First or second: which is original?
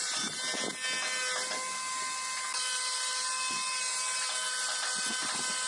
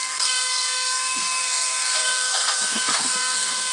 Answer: first